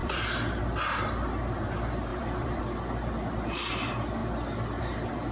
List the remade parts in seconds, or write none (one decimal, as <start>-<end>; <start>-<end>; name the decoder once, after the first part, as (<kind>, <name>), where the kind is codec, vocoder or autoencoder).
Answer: 0.0-0.6 (vocoder, BigVGAN v2); 2.1-2.6